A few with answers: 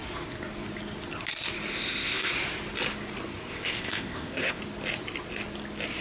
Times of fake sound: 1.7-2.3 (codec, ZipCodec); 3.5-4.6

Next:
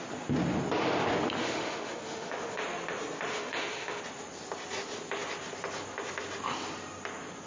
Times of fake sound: 1.4-2.6 (autoencoder, DAC-VAE); 3.3-4.0

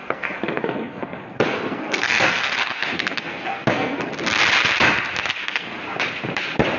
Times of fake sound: 0.0-4.1 (codec, SNAC); 5.3-5.8

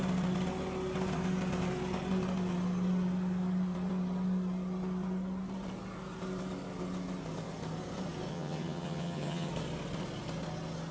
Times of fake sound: 8.3-9.5 (vocoder, HiFi-GAN)

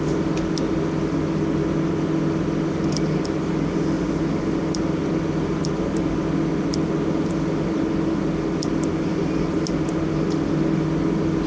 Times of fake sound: 9.1-9.6 (vocoder, BigVGAN v2)